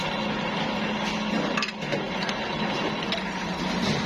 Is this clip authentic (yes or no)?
yes